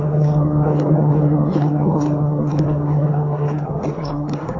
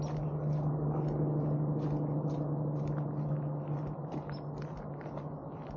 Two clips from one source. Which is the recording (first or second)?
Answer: second